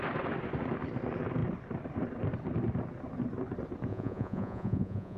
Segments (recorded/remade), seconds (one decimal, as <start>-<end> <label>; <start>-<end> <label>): 0.0-3.9 recorded; 3.9-5.2 remade